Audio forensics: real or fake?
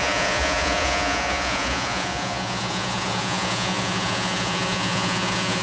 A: fake